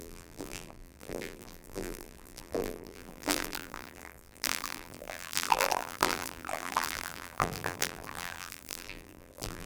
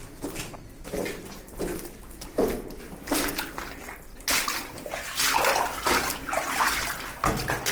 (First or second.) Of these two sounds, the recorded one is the second